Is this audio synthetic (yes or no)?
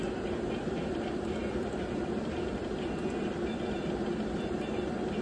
yes